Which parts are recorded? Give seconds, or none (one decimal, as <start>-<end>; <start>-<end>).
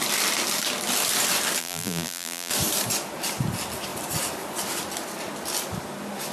0.0-1.6; 2.5-6.3